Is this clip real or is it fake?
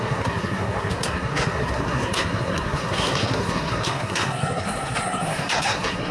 fake